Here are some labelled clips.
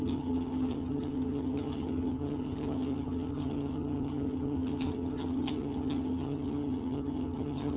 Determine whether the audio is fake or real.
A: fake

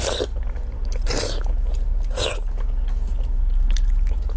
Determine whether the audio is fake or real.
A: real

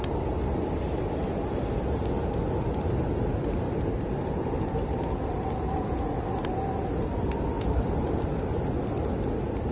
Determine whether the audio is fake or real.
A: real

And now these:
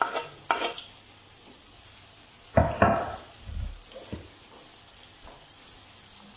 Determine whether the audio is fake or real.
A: real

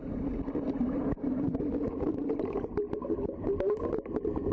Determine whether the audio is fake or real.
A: real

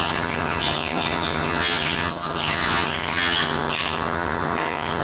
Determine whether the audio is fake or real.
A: fake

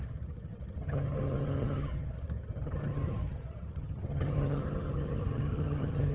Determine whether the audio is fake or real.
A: fake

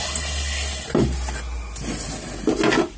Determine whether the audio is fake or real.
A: real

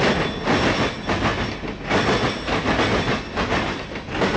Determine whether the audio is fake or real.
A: real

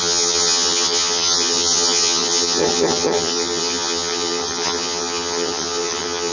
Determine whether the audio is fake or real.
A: fake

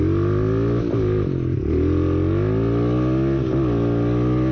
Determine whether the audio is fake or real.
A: real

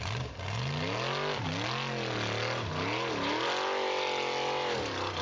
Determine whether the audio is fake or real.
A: real